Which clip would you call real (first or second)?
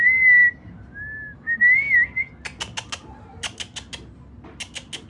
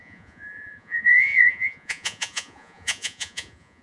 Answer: first